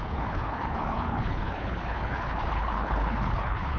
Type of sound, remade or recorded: remade